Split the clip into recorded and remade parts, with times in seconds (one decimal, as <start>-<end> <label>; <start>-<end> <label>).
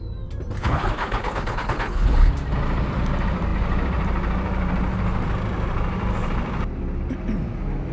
0.0-0.6 recorded; 0.6-2.3 remade; 2.3-7.9 recorded